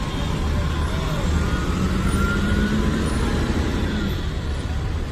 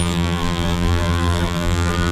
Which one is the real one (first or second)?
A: first